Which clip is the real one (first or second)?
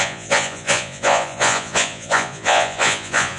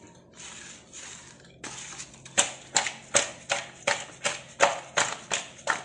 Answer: second